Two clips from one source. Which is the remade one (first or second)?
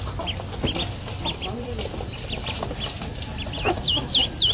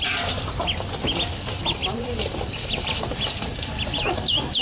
second